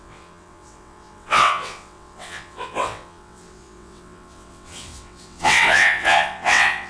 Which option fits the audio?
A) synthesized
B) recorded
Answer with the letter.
A